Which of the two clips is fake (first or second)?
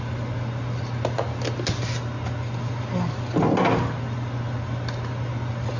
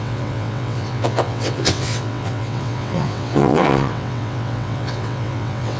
second